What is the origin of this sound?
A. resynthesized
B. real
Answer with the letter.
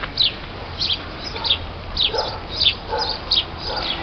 B